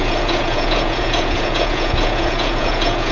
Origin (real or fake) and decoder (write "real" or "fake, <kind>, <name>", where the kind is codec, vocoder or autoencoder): fake, vocoder, Vocos